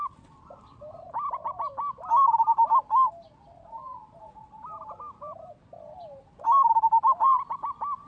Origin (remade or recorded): recorded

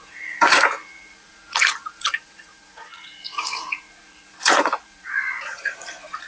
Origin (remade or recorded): remade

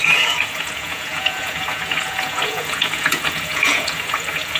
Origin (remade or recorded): remade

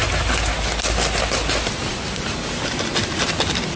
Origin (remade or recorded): recorded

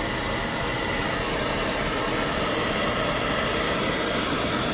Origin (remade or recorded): recorded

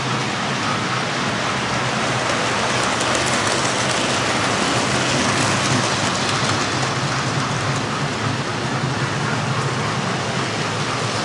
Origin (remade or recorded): recorded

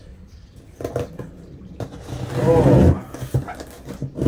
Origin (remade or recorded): recorded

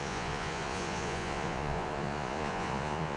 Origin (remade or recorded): remade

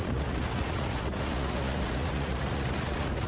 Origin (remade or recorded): remade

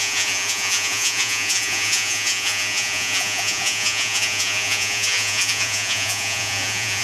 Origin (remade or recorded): remade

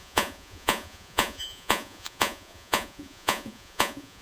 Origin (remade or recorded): remade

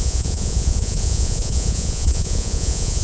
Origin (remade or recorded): remade